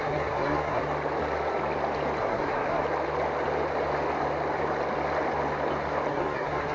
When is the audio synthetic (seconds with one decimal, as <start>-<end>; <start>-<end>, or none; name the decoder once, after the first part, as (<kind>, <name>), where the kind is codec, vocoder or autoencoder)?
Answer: 0.0-0.8 (codec, SNAC); 2.2-2.8; 6.1-6.7